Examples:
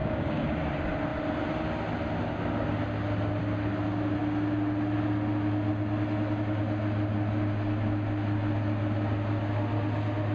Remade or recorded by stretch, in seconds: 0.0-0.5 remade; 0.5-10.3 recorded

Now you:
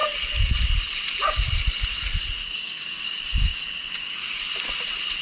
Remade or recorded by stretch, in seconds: 0.0-2.4 recorded; 2.4-4.4 remade; 4.4-5.2 recorded

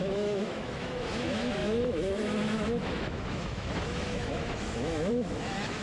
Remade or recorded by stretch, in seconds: 0.0-5.8 remade

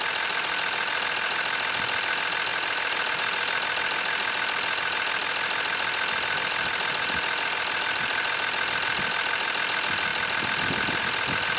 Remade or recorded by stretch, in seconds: 0.0-11.6 recorded